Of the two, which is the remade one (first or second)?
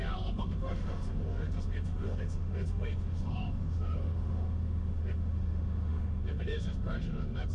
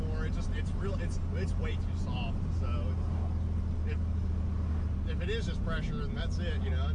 first